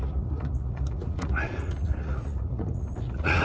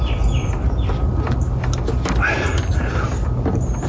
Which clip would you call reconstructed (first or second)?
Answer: first